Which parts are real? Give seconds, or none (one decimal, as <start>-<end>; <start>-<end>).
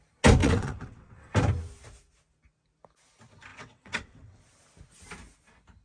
0.0-0.4; 1.3-3.5; 4.4-5.8